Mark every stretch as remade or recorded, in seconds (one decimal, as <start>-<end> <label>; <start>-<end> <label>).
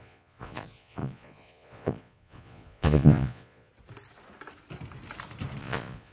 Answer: 0.0-3.7 remade; 3.7-5.6 recorded; 5.6-6.1 remade